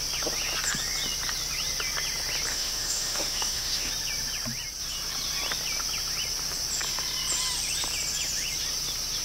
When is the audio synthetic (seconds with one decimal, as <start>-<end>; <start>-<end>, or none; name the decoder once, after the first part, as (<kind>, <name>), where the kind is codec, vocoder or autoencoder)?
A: 2.5-3.9 (autoencoder, DAC-VAE)